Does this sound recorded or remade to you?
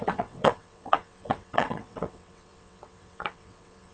remade